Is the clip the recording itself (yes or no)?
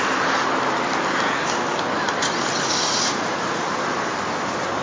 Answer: yes